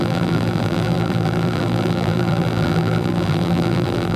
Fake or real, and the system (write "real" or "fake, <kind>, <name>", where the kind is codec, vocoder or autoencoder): fake, vocoder, BigVGAN v2